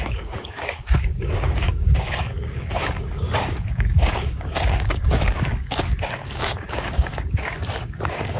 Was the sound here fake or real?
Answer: fake